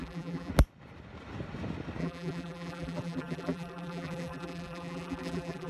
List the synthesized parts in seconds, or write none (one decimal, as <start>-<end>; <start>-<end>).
0.0-0.5; 2.0-5.7